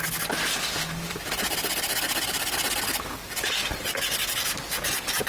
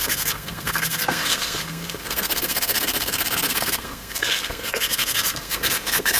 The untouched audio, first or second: first